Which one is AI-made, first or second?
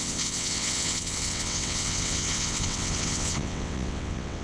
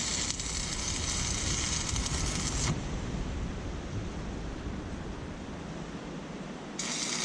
first